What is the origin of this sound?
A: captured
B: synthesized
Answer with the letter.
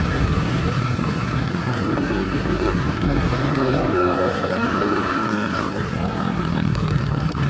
B